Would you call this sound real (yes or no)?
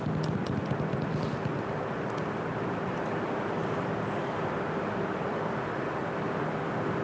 yes